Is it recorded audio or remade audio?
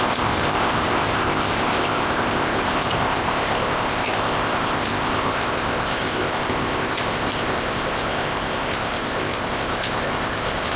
remade